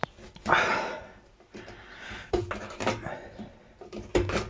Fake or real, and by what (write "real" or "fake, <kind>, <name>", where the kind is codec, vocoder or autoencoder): real